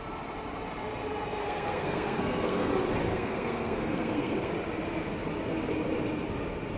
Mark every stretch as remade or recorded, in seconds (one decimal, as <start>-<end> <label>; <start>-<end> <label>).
0.0-1.4 recorded; 1.4-2.7 remade; 2.7-3.1 recorded; 3.1-4.5 remade; 4.5-6.8 recorded

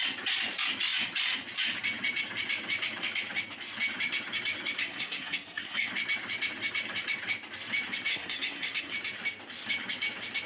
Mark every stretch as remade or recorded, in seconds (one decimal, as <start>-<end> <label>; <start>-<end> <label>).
0.0-4.8 recorded; 4.8-5.9 remade; 5.9-8.1 recorded; 8.1-8.9 remade; 8.9-10.5 recorded

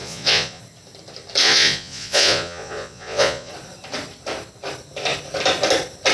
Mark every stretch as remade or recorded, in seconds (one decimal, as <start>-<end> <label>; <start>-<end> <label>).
0.0-0.6 remade; 0.6-1.4 recorded; 1.4-3.5 remade; 3.5-6.1 recorded